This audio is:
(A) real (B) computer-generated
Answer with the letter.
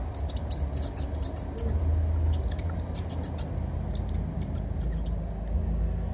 A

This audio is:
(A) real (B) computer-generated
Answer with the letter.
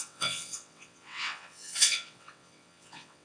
B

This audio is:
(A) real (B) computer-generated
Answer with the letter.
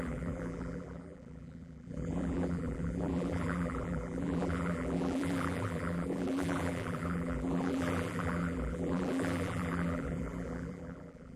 B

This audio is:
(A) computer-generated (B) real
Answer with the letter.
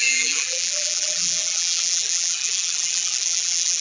A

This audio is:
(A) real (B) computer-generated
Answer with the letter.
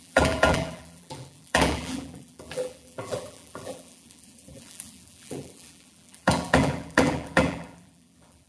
B